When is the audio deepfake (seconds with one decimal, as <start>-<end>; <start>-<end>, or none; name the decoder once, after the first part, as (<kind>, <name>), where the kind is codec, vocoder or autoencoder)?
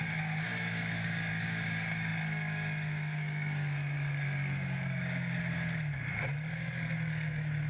0.0-7.7 (codec, DAC)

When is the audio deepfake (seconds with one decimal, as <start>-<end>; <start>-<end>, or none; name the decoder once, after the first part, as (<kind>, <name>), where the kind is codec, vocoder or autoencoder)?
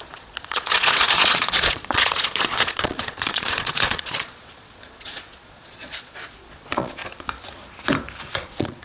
0.0-7.0 (vocoder, Vocos); 8.3-8.8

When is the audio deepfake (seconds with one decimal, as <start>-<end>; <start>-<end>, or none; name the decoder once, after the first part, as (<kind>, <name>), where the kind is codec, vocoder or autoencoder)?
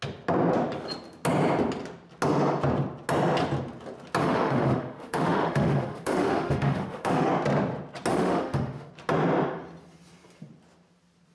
4.2-7.3 (autoencoder, DAC-VAE); 8.1-8.9